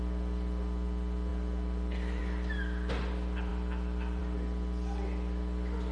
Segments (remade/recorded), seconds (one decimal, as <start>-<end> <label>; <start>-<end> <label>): 0.0-5.9 recorded